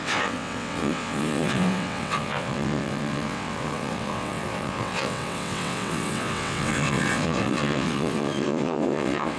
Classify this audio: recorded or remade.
remade